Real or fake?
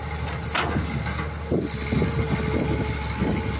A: real